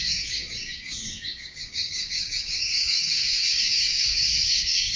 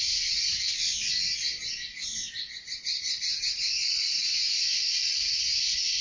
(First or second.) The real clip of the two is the second